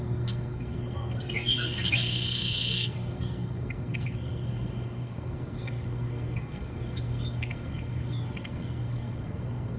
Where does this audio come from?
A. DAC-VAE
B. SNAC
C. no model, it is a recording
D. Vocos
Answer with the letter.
B